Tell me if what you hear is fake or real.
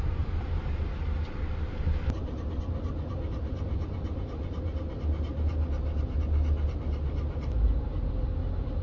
real